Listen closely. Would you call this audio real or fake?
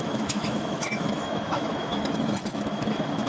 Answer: fake